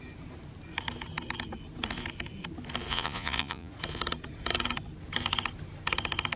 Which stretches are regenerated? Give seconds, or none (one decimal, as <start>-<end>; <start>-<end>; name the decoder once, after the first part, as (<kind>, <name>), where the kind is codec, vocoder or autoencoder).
2.9-3.7 (vocoder, Vocos)